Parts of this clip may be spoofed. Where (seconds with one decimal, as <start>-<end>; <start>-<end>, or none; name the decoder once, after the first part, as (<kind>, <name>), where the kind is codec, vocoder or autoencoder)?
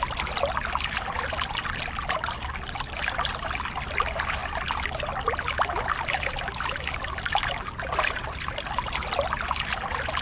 none